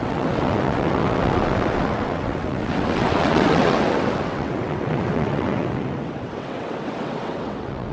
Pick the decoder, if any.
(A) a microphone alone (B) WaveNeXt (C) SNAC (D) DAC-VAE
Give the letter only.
B